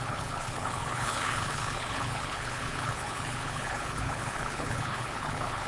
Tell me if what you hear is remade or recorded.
remade